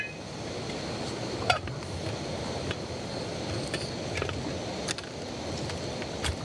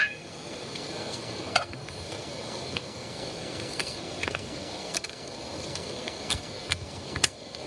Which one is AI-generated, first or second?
second